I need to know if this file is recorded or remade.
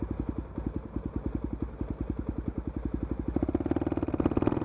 recorded